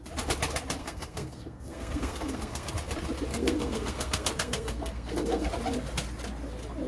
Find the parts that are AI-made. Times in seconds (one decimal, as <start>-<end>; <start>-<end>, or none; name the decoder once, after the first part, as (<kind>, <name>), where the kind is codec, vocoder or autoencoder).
0.8-2.7 (codec, SNAC); 3.3-5.5

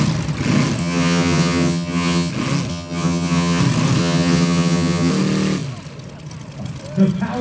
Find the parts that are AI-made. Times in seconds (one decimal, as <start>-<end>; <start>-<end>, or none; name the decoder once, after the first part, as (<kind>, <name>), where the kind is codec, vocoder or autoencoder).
0.8-2.3 (vocoder, HiFi-GAN); 2.7-3.6; 4.0-5.1

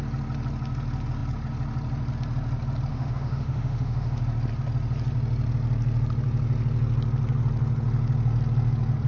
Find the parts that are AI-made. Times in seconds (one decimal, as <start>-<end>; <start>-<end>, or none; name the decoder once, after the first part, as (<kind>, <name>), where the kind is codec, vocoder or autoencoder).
2.9-4.2 (autoencoder, DAC-VAE)

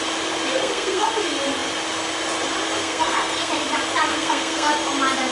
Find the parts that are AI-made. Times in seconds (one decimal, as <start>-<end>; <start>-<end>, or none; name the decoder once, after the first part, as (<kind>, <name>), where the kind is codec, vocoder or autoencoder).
0.5-1.1 (codec, SNAC); 2.8-3.5; 4.1-4.7

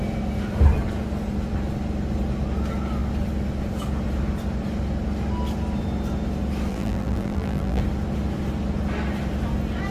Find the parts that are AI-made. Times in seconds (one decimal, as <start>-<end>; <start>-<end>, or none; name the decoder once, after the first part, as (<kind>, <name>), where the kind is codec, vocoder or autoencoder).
6.7-7.8 (vocoder, BigVGAN v2)

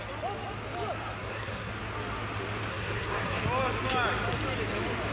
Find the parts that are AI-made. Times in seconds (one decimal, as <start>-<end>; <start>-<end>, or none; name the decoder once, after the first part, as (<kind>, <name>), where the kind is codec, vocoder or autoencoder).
1.2-1.7 (codec, SNAC); 2.7-3.4